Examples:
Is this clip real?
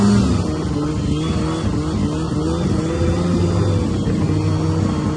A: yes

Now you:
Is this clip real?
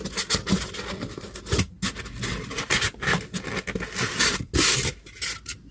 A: yes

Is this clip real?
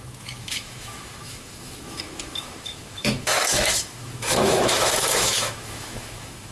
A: no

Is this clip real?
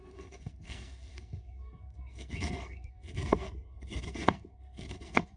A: no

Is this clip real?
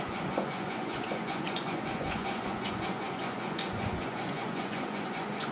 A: no